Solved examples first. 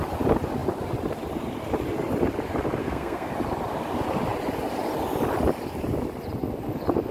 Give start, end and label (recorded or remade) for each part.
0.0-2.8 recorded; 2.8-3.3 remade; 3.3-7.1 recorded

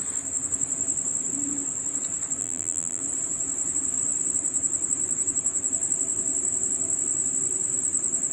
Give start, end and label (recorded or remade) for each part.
0.0-2.4 recorded; 2.4-3.0 remade; 3.0-8.3 recorded

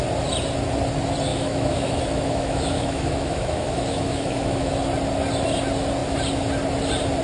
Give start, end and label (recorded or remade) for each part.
0.0-1.3 recorded; 1.3-4.7 remade; 4.7-7.2 recorded

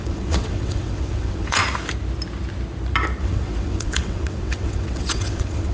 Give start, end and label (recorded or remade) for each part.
0.0-1.6 remade; 1.6-3.2 recorded; 3.2-5.7 remade

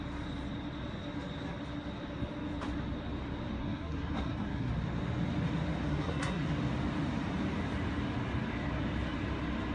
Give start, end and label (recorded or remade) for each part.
0.0-3.6 recorded; 3.6-4.7 remade; 4.7-5.9 recorded; 5.9-6.5 remade; 6.5-9.7 recorded

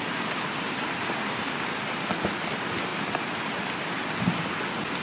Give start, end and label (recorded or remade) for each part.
0.0-5.0 recorded

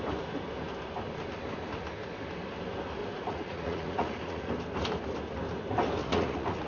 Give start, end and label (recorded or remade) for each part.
0.0-3.0 recorded; 3.0-4.5 remade; 4.5-6.0 recorded; 6.0-6.7 remade